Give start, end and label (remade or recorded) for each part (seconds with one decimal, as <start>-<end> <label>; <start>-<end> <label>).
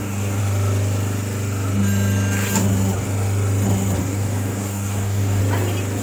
0.0-0.4 remade; 0.4-4.0 recorded; 4.0-5.4 remade; 5.4-6.0 recorded